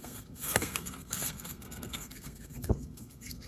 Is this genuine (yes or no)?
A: no